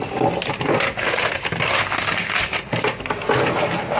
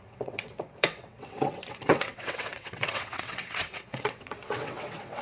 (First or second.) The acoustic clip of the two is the first